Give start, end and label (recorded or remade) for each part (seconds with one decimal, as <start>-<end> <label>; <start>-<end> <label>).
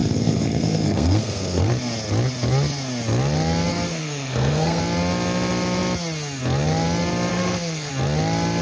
0.0-1.7 remade; 1.7-3.7 recorded; 3.7-4.8 remade; 4.8-7.3 recorded; 7.3-7.9 remade; 7.9-8.6 recorded